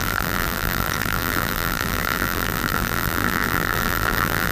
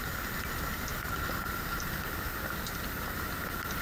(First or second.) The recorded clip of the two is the second